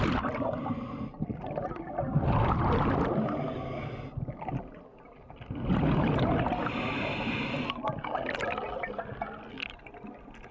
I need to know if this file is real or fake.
real